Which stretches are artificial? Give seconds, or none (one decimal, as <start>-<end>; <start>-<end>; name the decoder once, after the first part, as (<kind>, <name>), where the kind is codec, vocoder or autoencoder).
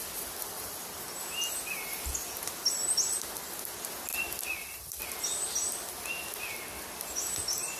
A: 4.1-5.2 (vocoder, BigVGAN v2)